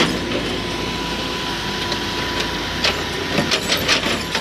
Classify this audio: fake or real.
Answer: real